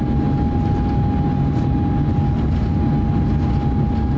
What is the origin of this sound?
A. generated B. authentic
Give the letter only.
B